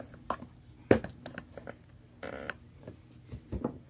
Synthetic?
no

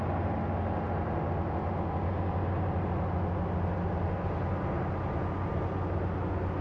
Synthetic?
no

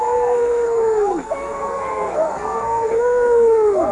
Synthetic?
yes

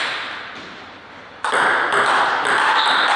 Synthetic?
no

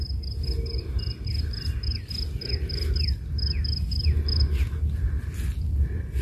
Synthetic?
no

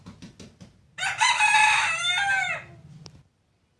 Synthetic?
no